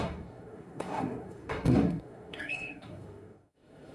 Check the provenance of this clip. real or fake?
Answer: fake